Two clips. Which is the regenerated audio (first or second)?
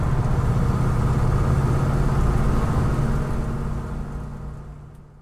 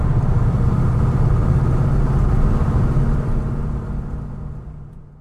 second